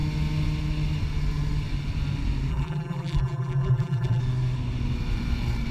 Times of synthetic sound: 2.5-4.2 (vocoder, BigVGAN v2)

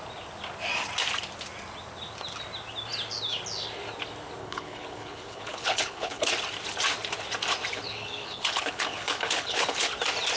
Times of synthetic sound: 4.4-6.3 (codec, HILCodec); 7.7-9.9

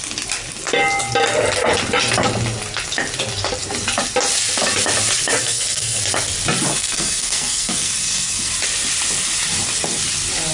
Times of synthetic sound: 5.4-6.0 (codec, SNAC); 6.7-8.5